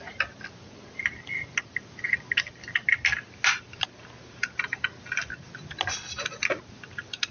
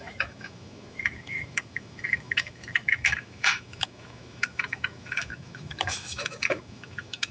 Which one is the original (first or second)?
first